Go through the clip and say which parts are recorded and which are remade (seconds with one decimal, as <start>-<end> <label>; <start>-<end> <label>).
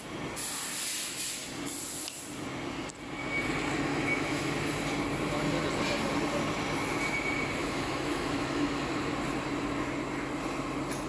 0.0-3.9 recorded; 3.9-4.5 remade; 4.5-7.6 recorded; 7.6-8.8 remade; 8.8-11.1 recorded